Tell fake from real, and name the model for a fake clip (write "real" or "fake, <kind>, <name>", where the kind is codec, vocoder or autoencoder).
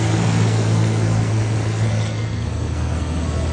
fake, codec, SNAC